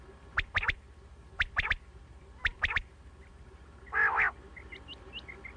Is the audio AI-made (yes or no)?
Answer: no